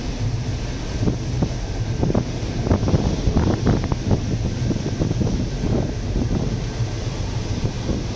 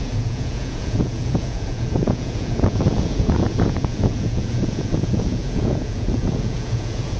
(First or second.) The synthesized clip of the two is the second